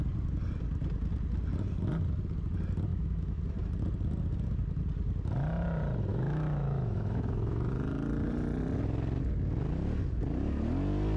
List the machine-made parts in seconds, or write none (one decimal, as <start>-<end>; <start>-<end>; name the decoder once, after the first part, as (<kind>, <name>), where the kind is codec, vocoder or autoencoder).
2.9-3.4 (autoencoder, DAC-VAE); 6.1-7.7